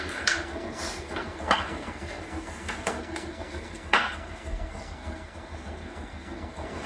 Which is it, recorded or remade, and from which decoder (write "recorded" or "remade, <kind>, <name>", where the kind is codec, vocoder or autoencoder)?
remade, codec, SNAC